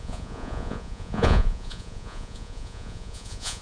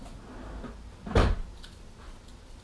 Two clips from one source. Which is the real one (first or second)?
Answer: second